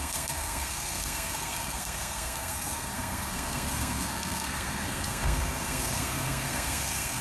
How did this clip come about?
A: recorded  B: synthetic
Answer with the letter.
B